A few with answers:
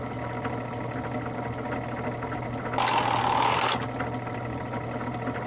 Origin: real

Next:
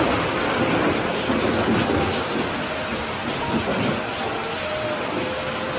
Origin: real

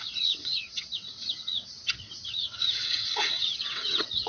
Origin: fake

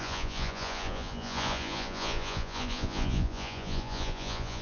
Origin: fake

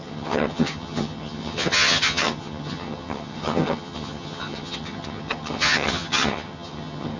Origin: fake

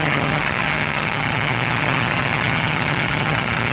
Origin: fake